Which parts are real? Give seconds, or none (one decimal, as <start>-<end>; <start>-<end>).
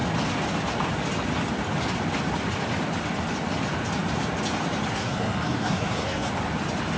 0.0-4.9; 6.3-7.0